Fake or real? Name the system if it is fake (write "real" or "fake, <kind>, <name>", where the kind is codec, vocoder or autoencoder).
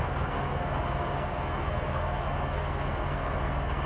fake, codec, SNAC